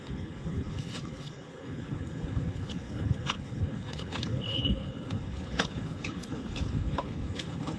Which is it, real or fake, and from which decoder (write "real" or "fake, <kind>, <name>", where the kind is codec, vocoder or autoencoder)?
fake, codec, HILCodec